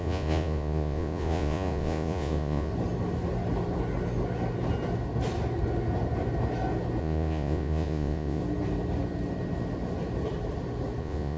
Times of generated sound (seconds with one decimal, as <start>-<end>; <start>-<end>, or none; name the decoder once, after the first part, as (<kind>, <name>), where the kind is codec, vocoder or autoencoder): 0.0-2.7 (vocoder, Vocos); 7.0-8.4; 11.0-11.4